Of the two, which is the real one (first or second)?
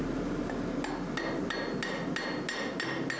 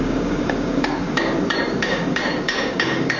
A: first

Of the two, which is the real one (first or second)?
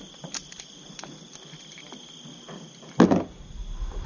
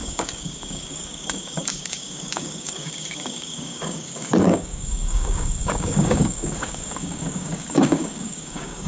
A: first